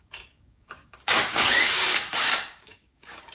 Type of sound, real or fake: fake